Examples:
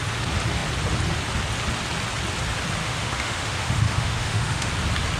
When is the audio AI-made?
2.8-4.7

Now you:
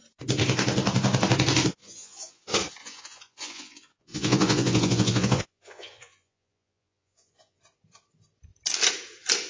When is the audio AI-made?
1.8-2.4; 2.8-7.6

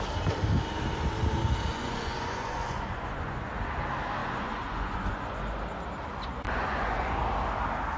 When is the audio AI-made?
1.7-3.5; 4.2-5.6; 6.1-7.2

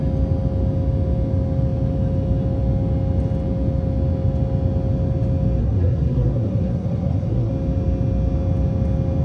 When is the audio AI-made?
5.6-7.5

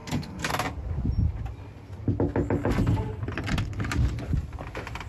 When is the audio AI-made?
0.0-0.5

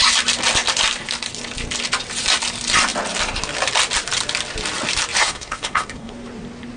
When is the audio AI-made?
5.2-6.1